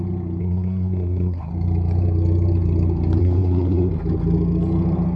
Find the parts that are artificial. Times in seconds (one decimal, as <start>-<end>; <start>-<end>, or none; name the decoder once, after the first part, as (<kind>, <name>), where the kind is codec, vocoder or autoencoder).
0.4-1.5 (codec, SNAC); 3.2-3.9